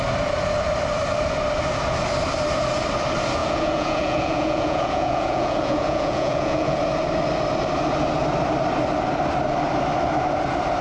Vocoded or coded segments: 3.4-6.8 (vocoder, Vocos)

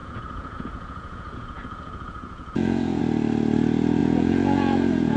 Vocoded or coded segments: 0.0-3.0 (vocoder, Vocos); 4.0-5.2

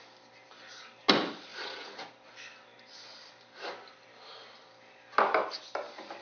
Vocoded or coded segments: none

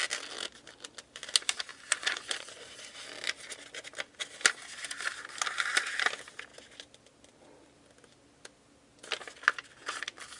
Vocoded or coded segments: 1.7-2.7 (vocoder, Vocos)

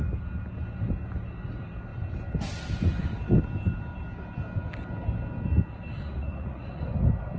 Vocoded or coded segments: 5.9-6.8 (vocoder, Vocos)